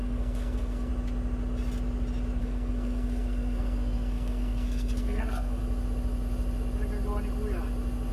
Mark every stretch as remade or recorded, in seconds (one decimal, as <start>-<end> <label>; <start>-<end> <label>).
0.0-0.9 remade; 0.9-2.4 recorded; 2.4-5.6 remade; 5.6-8.1 recorded